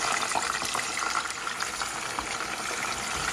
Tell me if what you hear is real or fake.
real